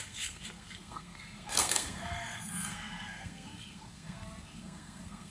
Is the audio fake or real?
fake